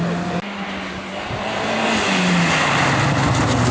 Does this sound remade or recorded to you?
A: recorded